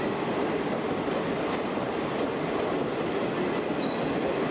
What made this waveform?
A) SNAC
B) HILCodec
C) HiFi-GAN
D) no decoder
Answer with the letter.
D